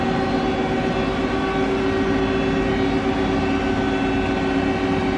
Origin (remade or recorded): recorded